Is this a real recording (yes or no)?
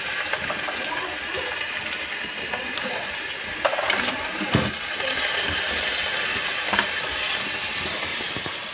no